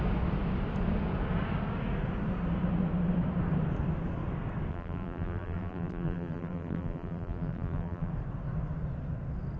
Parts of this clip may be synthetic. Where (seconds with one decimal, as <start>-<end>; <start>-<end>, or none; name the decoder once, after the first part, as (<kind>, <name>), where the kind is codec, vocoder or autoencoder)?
4.7-8.1 (vocoder, BigVGAN v2)